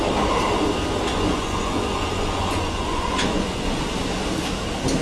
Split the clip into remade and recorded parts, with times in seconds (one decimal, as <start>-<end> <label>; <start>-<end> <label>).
0.0-1.1 recorded; 1.1-3.8 remade; 3.8-5.0 recorded